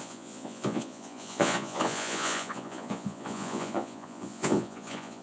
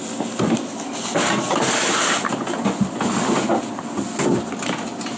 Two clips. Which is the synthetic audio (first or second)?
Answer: first